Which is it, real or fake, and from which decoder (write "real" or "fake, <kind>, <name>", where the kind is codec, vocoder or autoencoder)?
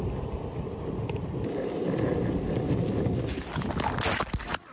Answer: real